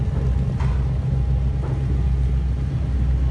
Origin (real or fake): real